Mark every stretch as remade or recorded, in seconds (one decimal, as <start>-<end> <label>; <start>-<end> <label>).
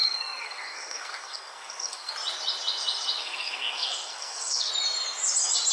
0.0-2.1 remade; 2.1-3.2 recorded; 3.2-4.7 remade; 4.7-5.7 recorded